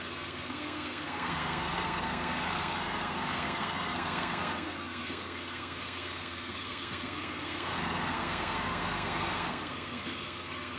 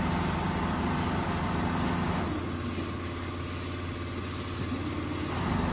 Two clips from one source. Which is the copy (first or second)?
first